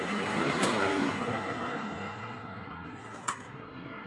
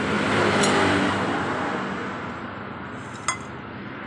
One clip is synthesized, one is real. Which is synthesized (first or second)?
first